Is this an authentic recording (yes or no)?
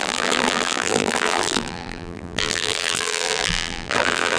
no